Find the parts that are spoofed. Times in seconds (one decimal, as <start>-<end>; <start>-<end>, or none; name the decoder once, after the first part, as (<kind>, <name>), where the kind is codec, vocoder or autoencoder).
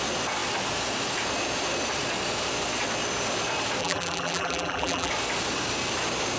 3.8-5.1 (vocoder, BigVGAN v2)